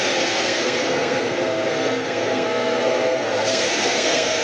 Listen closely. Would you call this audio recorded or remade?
remade